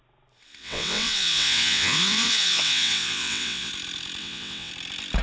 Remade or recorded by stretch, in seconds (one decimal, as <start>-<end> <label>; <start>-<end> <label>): 0.0-0.6 recorded; 0.6-3.7 remade; 3.7-4.2 recorded; 4.2-4.7 remade; 4.7-5.2 recorded